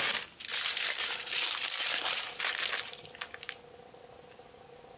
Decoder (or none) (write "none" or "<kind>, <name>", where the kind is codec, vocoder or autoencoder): none